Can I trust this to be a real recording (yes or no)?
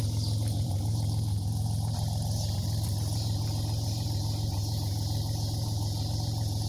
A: no